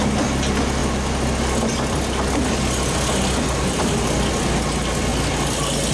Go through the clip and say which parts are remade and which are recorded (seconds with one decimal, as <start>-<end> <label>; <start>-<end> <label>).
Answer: 0.0-5.9 recorded